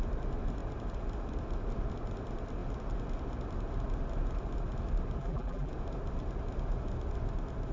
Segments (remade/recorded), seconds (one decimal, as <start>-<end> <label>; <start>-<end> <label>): 0.0-5.2 recorded; 5.2-5.7 remade; 5.7-7.7 recorded